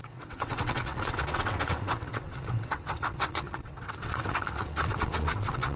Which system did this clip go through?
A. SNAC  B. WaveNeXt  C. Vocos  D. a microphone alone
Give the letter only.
B